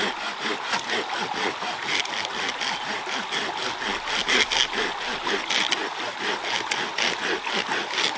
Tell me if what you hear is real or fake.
real